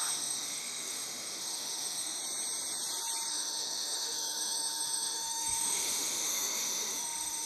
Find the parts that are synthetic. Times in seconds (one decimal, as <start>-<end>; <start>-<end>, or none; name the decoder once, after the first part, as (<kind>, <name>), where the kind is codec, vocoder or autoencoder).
0.0-2.2 (autoencoder, DAC-VAE); 3.3-7.5